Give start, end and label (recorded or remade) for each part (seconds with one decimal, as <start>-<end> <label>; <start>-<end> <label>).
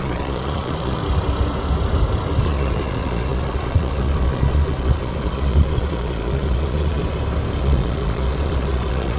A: 0.0-1.0 remade; 1.0-2.4 recorded; 2.4-7.0 remade; 7.0-7.6 recorded; 7.6-9.2 remade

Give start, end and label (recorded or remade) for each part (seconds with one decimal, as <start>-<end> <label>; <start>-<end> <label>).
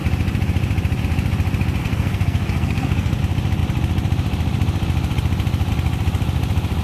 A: 0.0-1.8 recorded; 1.8-3.2 remade; 3.2-6.8 recorded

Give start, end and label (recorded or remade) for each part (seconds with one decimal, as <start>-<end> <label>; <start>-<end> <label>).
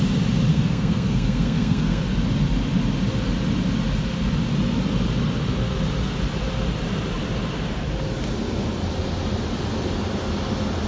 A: 0.0-0.5 recorded; 0.5-2.0 remade; 2.0-10.9 recorded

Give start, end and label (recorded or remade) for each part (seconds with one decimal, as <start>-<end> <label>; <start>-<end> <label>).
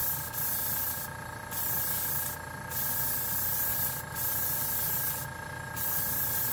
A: 0.0-1.5 remade; 1.5-3.7 recorded; 3.7-4.6 remade; 4.6-6.5 recorded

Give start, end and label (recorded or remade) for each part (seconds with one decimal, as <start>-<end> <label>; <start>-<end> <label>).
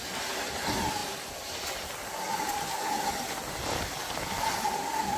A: 0.0-5.2 recorded